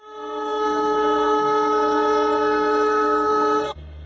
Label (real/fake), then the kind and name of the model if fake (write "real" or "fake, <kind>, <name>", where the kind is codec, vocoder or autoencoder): fake, codec, SNAC